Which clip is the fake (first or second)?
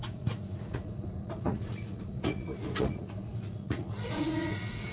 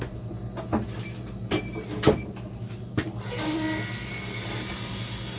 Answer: first